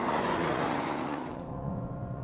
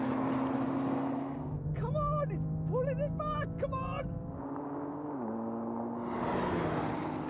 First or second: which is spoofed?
first